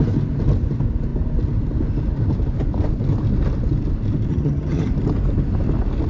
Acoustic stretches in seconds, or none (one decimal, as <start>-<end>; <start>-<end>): 0.0-4.3; 4.9-6.1